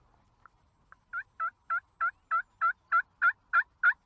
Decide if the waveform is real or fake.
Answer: real